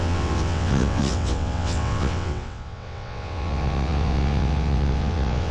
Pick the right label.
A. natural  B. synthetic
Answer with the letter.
B